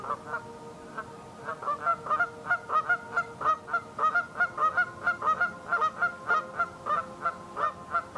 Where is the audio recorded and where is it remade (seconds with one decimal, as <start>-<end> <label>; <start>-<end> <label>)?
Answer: 0.0-8.2 recorded